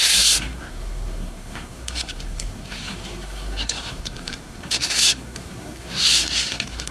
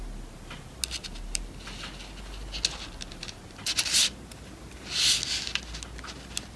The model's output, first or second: first